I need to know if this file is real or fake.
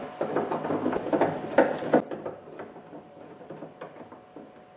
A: real